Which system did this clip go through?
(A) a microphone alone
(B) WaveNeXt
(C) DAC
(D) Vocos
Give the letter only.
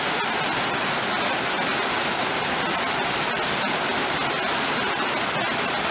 A